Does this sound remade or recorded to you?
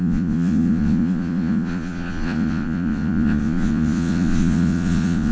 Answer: remade